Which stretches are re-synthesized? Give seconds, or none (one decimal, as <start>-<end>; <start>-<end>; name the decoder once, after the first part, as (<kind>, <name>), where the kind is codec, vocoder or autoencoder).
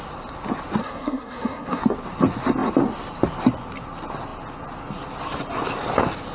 0.8-1.8 (codec, SNAC)